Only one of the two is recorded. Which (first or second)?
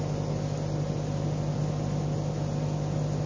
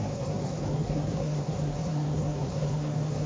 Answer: first